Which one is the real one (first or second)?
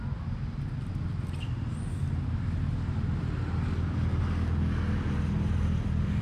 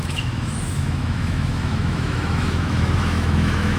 first